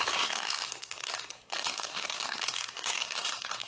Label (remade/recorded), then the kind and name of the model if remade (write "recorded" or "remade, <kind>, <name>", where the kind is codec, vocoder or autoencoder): remade, codec, SNAC